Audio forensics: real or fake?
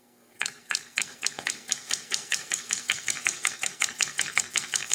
fake